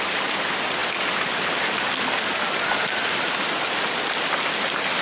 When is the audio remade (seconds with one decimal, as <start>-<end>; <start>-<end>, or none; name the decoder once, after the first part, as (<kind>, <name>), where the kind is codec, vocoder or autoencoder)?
none